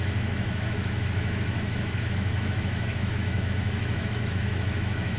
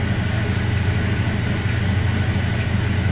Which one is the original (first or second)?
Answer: second